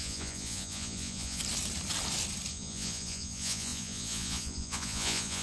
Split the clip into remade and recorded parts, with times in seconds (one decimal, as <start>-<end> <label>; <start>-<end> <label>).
0.0-1.4 remade; 1.4-2.5 recorded; 2.5-5.4 remade